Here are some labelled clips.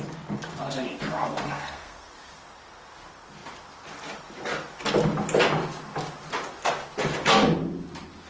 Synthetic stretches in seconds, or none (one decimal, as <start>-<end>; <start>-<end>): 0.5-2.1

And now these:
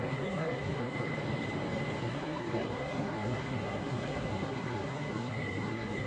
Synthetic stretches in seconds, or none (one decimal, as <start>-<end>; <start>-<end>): 0.0-1.1; 2.0-6.1

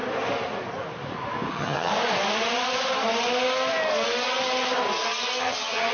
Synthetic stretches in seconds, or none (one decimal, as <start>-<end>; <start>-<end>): 1.5-1.9; 5.4-5.9

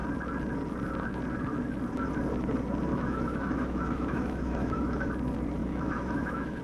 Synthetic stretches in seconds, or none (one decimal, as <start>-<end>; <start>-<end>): 2.9-5.1; 5.6-6.6

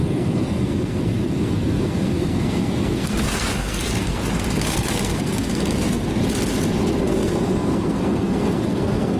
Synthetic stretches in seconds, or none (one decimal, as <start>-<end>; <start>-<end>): 0.0-6.2; 7.0-9.2

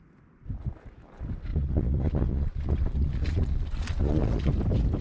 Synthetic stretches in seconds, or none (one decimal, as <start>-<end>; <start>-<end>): 1.5-4.5

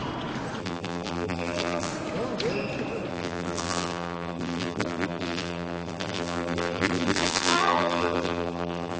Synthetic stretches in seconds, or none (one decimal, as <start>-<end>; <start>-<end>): 0.6-1.9; 3.1-9.0